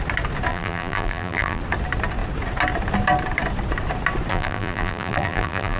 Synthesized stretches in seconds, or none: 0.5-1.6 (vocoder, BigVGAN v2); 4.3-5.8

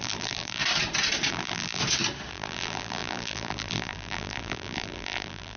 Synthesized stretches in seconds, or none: 0.0-0.6 (vocoder, BigVGAN v2); 1.3-1.8; 2.3-5.6

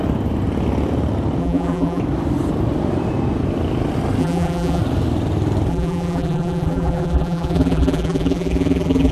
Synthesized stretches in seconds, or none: 1.4-2.0 (vocoder, BigVGAN v2); 4.2-4.8; 5.7-9.1

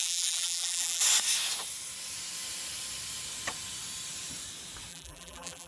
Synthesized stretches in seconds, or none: 0.0-1.0 (vocoder, BigVGAN v2); 4.9-5.7

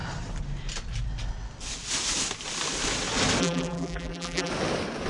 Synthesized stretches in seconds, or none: 3.4-4.5 (vocoder, BigVGAN v2)

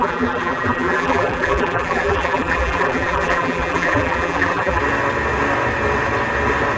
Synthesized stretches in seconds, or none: 0.0-4.8 (vocoder, BigVGAN v2)